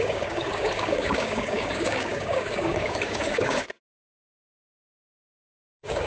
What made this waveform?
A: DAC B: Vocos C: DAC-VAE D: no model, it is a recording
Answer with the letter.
A